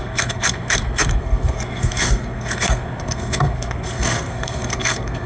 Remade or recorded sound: remade